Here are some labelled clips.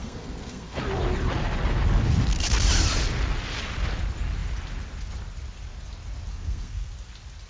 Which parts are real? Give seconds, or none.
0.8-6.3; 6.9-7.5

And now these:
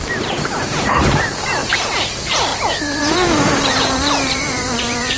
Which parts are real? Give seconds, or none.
1.6-2.1; 2.5-3.0

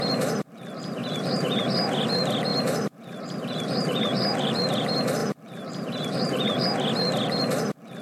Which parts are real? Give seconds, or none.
0.0-1.0; 1.6-2.5; 4.6-5.2; 6.6-8.0

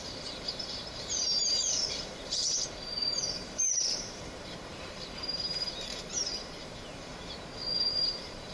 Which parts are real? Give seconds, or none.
7.1-7.7

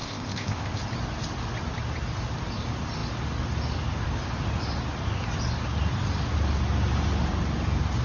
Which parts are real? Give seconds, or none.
0.8-8.0

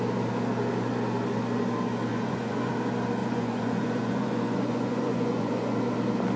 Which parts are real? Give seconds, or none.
0.0-2.1; 2.7-3.2; 5.8-6.4

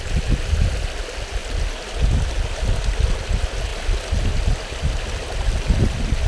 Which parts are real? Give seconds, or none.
0.0-6.3